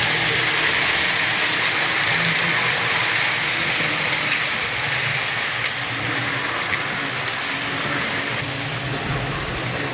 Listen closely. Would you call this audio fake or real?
real